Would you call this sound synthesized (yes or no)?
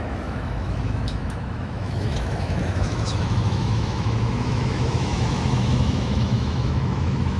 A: yes